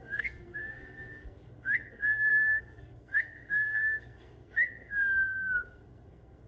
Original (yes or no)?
no